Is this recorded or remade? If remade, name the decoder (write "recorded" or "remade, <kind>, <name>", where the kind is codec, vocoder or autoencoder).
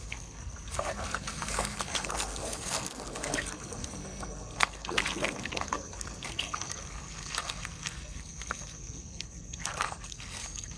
remade, codec, SNAC